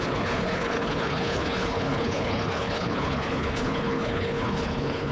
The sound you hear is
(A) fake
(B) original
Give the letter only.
A